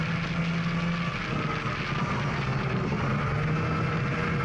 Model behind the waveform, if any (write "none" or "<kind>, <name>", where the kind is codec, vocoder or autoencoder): none